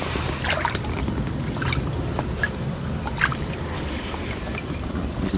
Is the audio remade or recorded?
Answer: remade